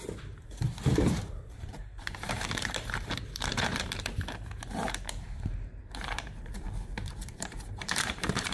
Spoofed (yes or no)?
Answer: yes